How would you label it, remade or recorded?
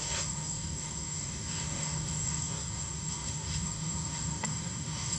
remade